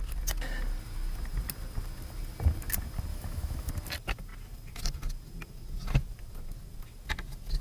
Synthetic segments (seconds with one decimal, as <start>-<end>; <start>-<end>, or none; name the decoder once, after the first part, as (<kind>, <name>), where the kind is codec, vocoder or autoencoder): 3.1-3.7 (autoencoder, DAC-VAE)